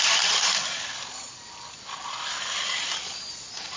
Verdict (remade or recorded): recorded